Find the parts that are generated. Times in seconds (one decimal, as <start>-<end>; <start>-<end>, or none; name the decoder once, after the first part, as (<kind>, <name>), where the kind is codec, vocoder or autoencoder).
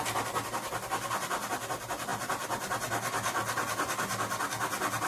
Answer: none